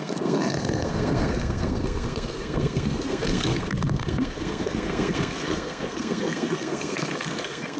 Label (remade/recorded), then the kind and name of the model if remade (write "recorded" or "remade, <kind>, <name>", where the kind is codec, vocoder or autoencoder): remade, codec, SNAC